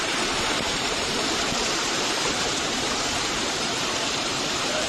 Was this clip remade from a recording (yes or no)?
yes